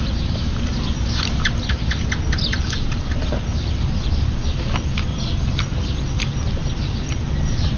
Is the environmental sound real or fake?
real